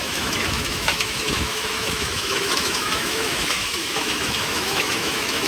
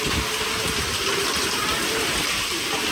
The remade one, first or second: first